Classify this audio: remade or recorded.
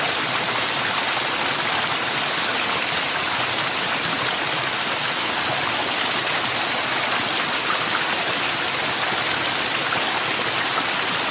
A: recorded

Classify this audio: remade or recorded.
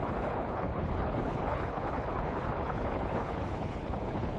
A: remade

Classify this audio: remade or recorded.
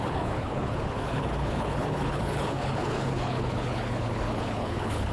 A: remade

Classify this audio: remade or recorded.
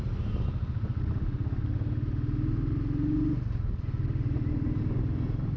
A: recorded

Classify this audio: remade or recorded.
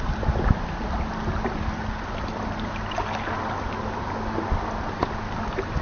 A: recorded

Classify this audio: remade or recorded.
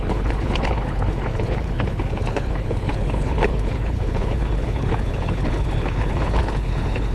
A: remade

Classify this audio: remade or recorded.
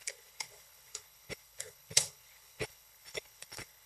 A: remade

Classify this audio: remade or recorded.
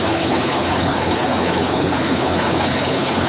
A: remade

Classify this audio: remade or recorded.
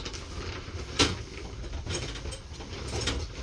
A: recorded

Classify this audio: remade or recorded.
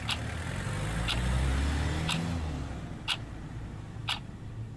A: recorded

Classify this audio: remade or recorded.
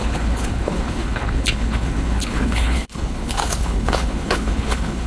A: remade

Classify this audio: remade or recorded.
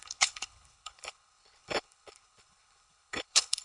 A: remade